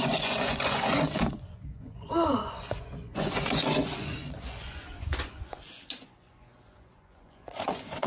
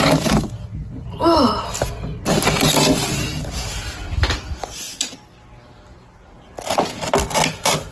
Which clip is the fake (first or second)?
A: first